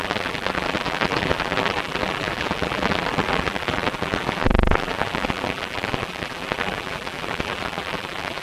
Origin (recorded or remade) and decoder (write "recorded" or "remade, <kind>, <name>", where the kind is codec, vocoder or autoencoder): remade, vocoder, BigVGAN v2